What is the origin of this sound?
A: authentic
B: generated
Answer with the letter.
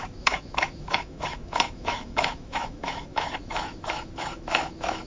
B